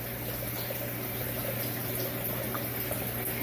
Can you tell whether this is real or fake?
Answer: real